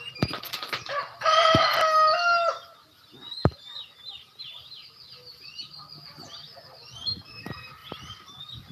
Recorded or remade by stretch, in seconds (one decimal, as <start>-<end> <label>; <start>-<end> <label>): 0.0-7.8 recorded; 7.8-8.7 remade